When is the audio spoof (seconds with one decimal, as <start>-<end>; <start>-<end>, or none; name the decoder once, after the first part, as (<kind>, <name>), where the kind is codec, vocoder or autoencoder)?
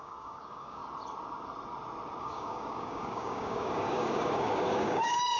0.0-0.8 (codec, DAC); 2.2-5.4